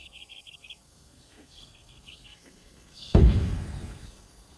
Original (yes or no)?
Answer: no